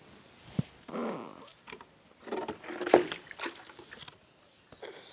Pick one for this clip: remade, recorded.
recorded